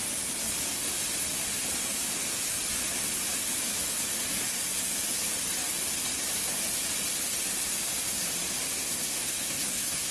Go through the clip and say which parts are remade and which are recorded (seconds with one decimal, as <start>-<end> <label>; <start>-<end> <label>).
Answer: 0.0-8.8 recorded; 8.8-10.1 remade